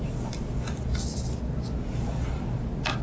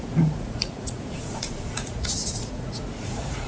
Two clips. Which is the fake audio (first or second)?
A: second